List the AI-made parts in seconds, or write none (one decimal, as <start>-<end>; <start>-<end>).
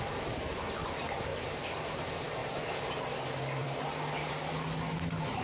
1.3-1.9; 2.4-3.0; 3.6-4.3